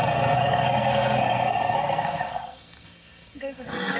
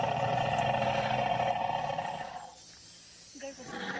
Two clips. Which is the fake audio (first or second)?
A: first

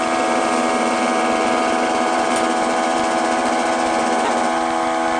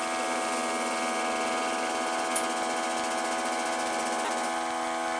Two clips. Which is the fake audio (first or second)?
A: first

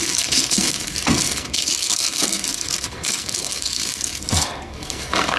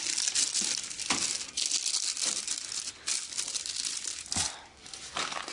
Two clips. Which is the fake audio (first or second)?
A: first